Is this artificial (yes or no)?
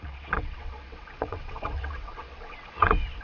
yes